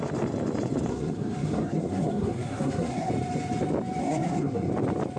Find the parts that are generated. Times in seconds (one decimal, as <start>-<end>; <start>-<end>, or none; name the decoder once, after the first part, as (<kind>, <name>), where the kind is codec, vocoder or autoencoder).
0.9-3.1 (codec, SNAC); 4.0-4.7